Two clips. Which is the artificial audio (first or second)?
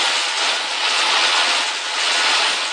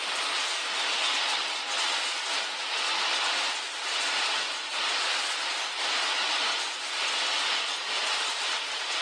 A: first